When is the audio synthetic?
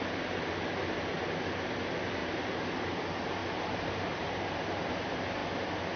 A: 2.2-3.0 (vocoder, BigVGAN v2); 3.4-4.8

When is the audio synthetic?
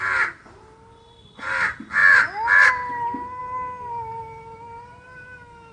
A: none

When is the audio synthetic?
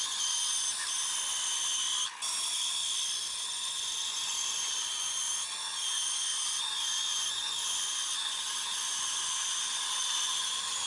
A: 0.0-0.7 (vocoder, Vocos); 3.3-10.9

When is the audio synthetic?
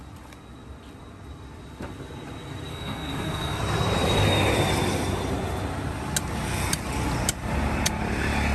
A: 2.7-3.6 (codec, SNAC)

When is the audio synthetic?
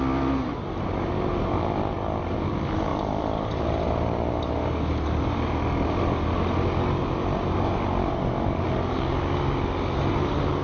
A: 2.9-4.4 (vocoder, BigVGAN v2)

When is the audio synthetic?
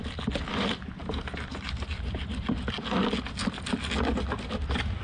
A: none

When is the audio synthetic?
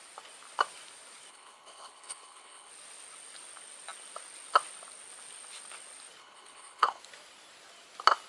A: 1.3-2.7 (codec, HILCodec); 6.2-7.0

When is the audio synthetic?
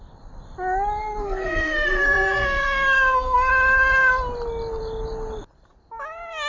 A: 1.0-3.5 (codec, SNAC)